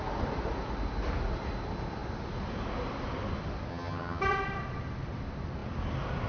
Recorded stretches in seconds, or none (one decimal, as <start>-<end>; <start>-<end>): 0.0-3.7; 4.2-6.3